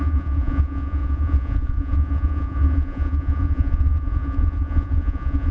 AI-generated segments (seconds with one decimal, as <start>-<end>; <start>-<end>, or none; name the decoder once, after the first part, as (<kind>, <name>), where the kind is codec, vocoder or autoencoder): 0.0-5.5 (vocoder, Vocos)